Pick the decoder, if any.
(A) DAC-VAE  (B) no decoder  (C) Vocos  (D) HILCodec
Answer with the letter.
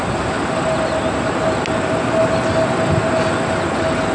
B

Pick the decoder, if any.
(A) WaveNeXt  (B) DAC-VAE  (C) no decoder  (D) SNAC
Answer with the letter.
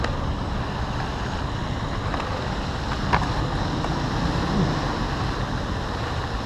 C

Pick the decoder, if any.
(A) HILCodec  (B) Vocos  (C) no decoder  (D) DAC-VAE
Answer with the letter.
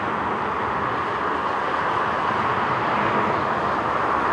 C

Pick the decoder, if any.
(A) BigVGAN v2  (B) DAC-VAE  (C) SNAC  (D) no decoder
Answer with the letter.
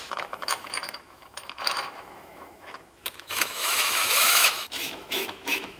B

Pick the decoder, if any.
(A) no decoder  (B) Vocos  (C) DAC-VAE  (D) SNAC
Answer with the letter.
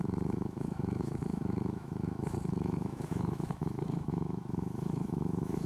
C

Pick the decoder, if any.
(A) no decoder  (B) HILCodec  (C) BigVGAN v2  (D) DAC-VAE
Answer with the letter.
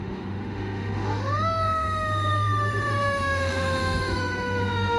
D